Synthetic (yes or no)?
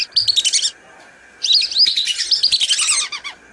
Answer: no